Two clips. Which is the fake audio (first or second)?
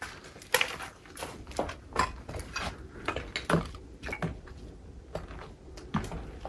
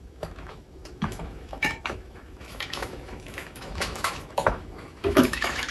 second